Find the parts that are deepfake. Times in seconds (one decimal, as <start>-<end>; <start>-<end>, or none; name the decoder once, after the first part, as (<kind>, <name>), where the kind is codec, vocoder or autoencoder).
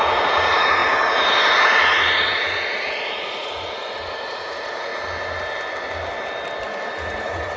0.0-4.9 (vocoder, Vocos); 7.0-7.6